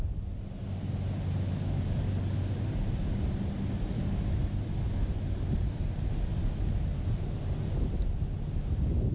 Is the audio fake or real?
real